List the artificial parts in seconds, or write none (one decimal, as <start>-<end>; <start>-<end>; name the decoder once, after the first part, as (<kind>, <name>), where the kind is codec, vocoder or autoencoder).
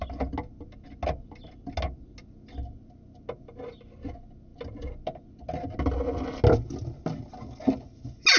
none